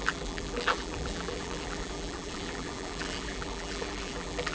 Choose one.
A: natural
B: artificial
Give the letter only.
B